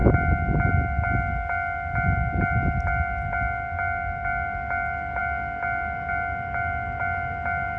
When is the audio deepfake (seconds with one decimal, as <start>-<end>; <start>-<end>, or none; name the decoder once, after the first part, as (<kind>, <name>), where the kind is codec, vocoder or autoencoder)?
none